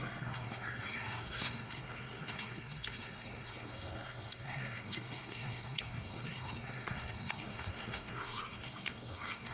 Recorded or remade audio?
remade